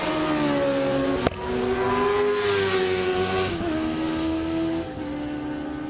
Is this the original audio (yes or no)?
yes